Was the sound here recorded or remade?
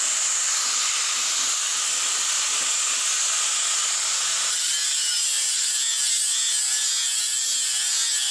recorded